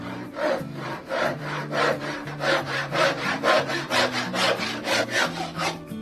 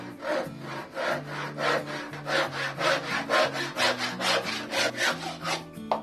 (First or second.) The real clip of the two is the second